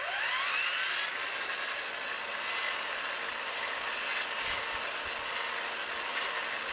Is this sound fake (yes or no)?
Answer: no